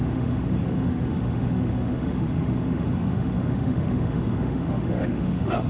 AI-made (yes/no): yes